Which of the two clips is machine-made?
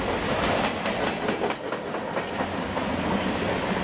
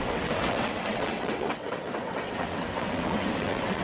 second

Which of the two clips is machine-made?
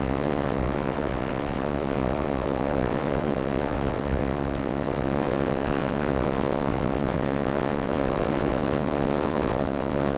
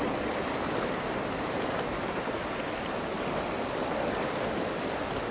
first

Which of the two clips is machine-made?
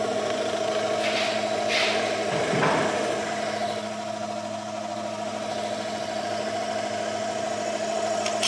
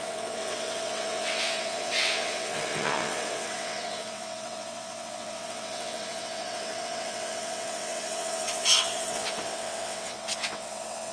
second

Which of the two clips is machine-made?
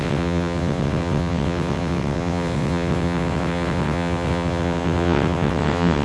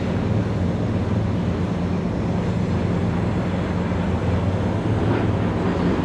first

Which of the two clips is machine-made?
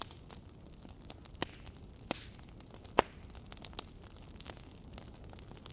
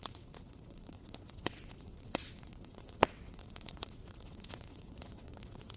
second